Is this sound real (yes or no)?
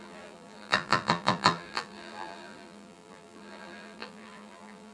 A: no